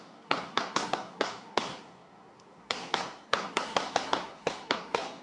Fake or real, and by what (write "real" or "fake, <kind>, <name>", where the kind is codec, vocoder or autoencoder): fake, codec, SNAC